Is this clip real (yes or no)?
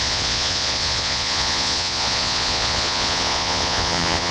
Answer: no